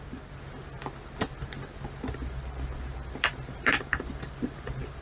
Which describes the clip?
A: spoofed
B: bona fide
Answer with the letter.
A